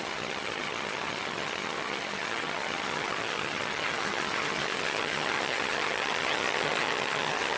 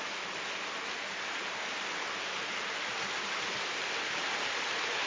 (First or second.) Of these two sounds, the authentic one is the second